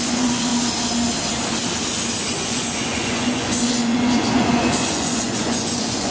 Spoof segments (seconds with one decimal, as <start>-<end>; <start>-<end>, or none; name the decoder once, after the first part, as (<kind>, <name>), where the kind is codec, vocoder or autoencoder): 0.0-0.5 (vocoder, Vocos); 2.3-6.1